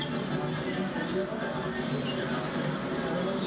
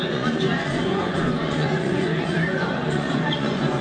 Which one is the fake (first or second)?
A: second